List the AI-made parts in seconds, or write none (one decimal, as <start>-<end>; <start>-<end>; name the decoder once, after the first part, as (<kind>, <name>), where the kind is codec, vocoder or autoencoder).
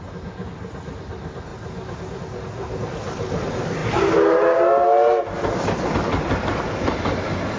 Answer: none